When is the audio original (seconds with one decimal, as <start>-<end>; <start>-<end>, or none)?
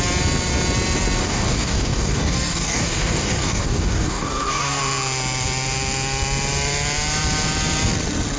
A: 0.0-1.2; 4.8-8.4